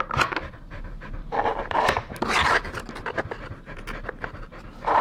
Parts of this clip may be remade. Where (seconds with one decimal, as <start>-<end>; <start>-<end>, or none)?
none

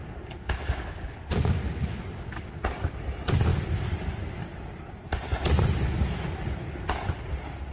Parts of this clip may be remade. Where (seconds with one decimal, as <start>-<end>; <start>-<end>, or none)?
none